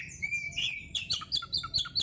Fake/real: fake